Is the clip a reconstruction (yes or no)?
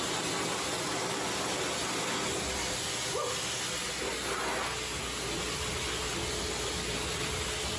no